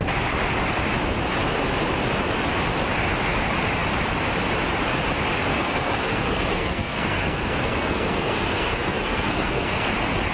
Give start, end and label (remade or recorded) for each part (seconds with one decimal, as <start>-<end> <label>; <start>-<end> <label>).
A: 0.0-5.5 recorded; 5.5-9.9 remade; 9.9-10.3 recorded